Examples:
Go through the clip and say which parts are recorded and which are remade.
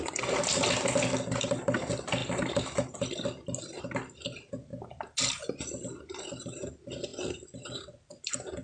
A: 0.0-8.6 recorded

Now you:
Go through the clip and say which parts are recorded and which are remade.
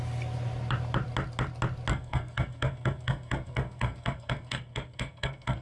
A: 0.0-1.9 recorded; 1.9-5.6 remade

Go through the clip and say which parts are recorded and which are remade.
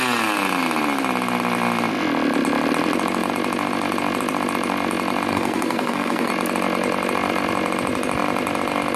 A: 0.0-5.3 recorded; 5.3-6.3 remade; 6.3-9.0 recorded